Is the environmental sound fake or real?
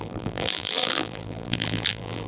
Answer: fake